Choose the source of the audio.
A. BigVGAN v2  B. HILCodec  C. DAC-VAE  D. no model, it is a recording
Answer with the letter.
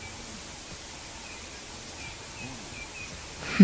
D